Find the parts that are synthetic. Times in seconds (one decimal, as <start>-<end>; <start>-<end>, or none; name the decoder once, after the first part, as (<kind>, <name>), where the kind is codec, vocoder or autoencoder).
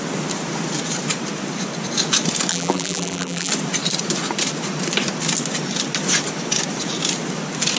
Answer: 2.5-3.5 (vocoder, BigVGAN v2)